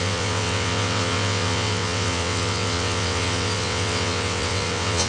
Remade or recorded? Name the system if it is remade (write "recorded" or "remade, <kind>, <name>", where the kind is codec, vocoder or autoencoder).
remade, vocoder, WaveNeXt